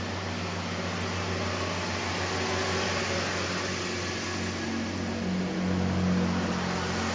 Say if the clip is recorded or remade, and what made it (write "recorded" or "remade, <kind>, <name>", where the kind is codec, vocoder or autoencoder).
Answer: recorded